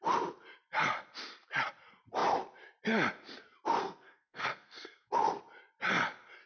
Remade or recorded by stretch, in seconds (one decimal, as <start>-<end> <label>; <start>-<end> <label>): 0.0-3.8 recorded; 3.8-5.1 remade; 5.1-6.5 recorded